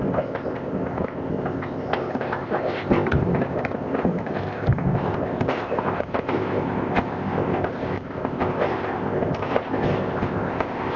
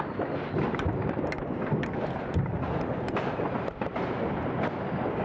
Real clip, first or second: second